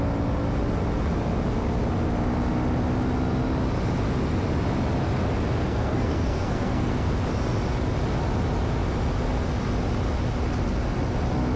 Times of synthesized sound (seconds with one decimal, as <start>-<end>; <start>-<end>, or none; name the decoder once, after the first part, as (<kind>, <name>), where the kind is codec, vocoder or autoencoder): 5.6-7.1 (codec, SNAC)